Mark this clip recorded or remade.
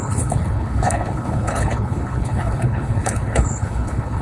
remade